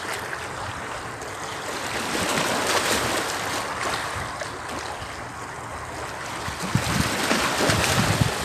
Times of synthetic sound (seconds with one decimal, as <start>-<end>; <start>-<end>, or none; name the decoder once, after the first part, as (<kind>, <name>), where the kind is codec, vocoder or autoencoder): none